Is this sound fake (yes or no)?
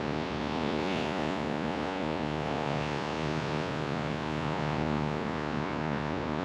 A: yes